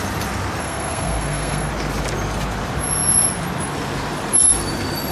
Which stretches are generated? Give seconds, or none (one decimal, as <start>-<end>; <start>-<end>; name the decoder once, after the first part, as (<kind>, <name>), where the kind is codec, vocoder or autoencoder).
0.6-1.7 (codec, SNAC)